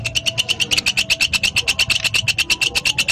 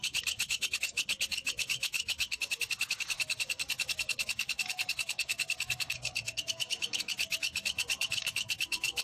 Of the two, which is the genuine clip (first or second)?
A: first